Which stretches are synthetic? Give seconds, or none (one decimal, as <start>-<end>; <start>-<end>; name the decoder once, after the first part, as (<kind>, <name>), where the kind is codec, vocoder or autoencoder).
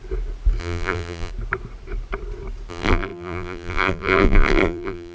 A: 0.6-1.3 (vocoder, BigVGAN v2); 2.7-5.1